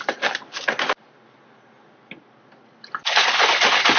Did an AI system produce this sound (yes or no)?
no